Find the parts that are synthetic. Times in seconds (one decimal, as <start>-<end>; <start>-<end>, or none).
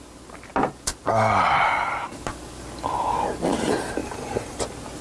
4.0-4.6